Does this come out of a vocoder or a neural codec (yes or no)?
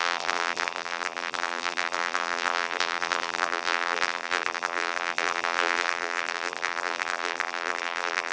yes